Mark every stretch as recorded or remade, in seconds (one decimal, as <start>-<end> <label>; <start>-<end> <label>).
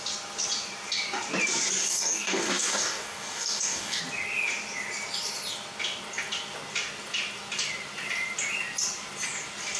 0.0-1.8 recorded; 1.8-4.0 remade; 4.0-9.8 recorded